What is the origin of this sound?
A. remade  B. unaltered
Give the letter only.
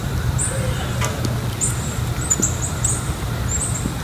B